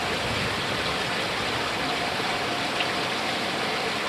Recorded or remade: recorded